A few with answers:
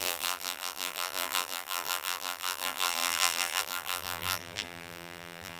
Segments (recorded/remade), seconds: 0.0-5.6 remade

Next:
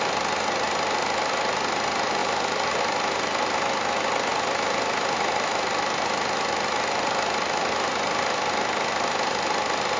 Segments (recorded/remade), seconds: 0.0-2.2 recorded; 2.2-2.8 remade; 2.8-4.3 recorded; 4.3-7.7 remade; 7.7-10.0 recorded

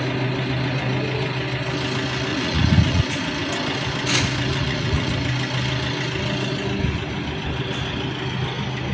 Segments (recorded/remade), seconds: 0.0-2.3 recorded; 2.3-3.0 remade; 3.0-4.5 recorded; 4.5-5.1 remade; 5.1-8.9 recorded

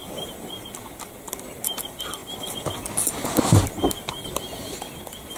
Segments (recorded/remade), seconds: 0.0-5.4 recorded

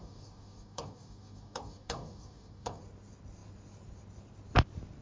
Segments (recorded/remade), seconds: 0.0-2.8 remade; 2.8-5.0 recorded

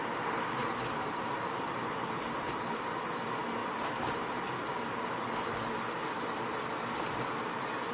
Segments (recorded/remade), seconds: 0.0-0.6 recorded; 0.6-2.8 remade; 2.8-3.6 recorded; 3.6-5.2 remade; 5.2-7.9 recorded